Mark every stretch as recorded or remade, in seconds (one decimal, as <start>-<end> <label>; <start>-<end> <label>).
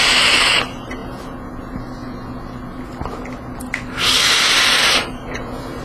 0.0-5.8 recorded